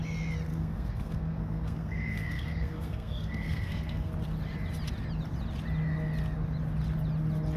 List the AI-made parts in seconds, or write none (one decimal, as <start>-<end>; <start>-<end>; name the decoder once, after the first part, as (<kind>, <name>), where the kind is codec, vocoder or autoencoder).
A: 0.5-4.1 (codec, SNAC)